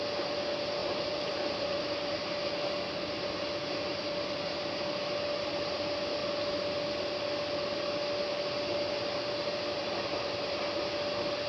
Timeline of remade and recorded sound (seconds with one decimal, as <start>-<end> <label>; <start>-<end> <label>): 0.0-0.8 recorded; 0.8-2.3 remade; 2.3-9.8 recorded; 9.8-10.6 remade; 10.6-11.5 recorded